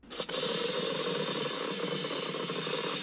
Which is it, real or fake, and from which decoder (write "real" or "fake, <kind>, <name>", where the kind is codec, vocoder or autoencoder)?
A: real